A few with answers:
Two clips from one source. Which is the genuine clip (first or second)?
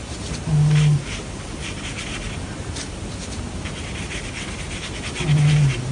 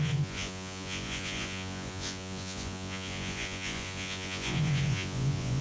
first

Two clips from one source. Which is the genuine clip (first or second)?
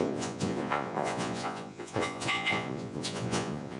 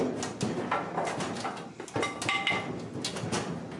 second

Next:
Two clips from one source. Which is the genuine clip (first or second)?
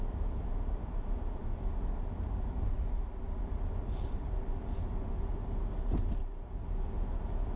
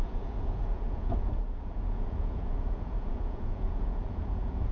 first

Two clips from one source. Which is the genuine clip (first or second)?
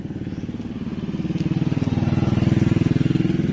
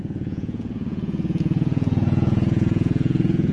first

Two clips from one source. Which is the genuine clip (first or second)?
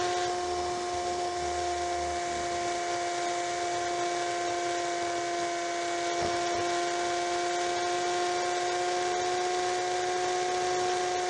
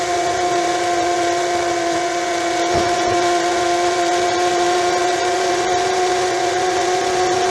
first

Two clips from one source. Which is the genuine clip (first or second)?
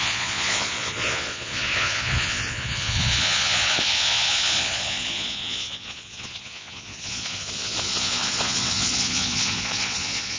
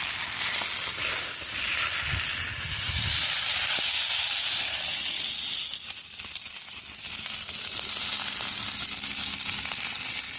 second